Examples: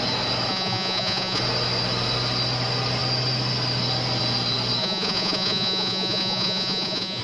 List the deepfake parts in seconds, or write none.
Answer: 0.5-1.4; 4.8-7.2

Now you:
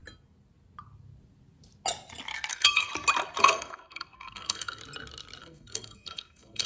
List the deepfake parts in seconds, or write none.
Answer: 2.5-2.9; 3.4-4.8; 5.4-6.7

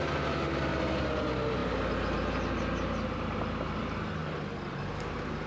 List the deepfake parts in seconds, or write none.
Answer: none

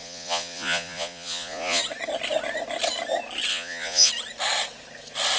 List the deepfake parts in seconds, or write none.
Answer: 0.0-1.8; 3.5-4.1

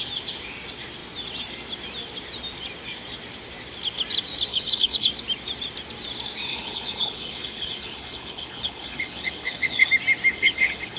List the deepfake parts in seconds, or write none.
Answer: 4.5-5.1; 6.5-9.9; 10.3-11.0

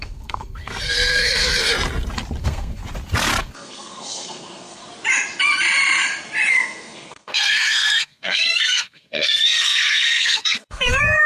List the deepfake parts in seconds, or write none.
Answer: 0.0-1.7; 2.4-2.8; 3.4-4.8; 6.5-11.3

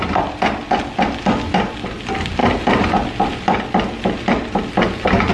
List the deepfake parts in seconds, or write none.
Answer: none

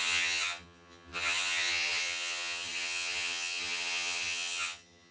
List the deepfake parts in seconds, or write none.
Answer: 0.0-5.1